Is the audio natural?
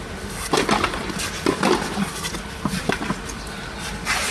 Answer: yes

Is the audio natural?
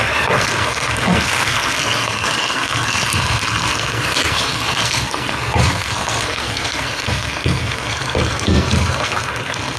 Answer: no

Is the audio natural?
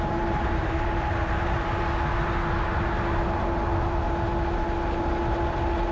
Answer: yes